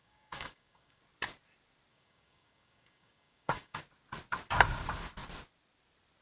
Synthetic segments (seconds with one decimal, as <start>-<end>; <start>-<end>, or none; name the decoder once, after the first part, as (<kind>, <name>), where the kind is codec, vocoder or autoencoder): 0.0-1.0 (codec, DAC); 1.9-3.8